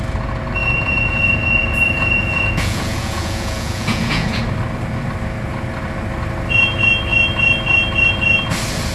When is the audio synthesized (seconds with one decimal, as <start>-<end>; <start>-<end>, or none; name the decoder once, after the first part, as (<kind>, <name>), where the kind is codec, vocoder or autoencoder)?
0.6-4.4 (vocoder, Vocos)